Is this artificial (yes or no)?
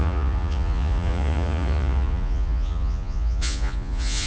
yes